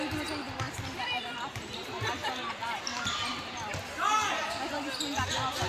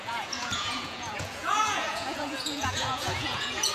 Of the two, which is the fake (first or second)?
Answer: second